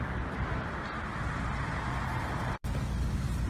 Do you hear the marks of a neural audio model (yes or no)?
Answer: no